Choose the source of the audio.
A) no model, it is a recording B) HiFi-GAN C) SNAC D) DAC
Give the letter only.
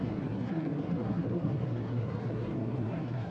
C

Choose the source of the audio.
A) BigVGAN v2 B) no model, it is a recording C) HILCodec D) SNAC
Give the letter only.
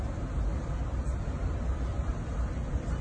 B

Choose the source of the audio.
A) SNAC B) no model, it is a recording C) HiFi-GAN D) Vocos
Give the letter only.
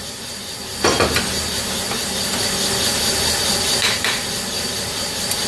B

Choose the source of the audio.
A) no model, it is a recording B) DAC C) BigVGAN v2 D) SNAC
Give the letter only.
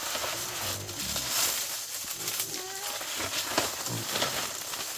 A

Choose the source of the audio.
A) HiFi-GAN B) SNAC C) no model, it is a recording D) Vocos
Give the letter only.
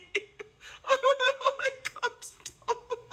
B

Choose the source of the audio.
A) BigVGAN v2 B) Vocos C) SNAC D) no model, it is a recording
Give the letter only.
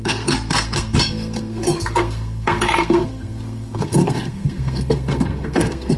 C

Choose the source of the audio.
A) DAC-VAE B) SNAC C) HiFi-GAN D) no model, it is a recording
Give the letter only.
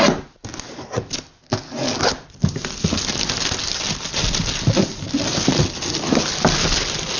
D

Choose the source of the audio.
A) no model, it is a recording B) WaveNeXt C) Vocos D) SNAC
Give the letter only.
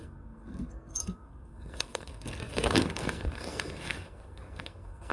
D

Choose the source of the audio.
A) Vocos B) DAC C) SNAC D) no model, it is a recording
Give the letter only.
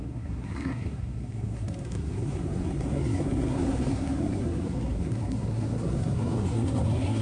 C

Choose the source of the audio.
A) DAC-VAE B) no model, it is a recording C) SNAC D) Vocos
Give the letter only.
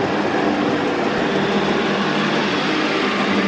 B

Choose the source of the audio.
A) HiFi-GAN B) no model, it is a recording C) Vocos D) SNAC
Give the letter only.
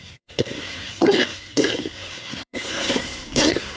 D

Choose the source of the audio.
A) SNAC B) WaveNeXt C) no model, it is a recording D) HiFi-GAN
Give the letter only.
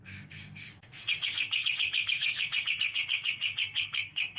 A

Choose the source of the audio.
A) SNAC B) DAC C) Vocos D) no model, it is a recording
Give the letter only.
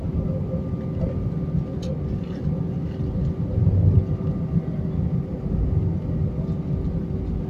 D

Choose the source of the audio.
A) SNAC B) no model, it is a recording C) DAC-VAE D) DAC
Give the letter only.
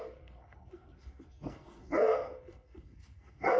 A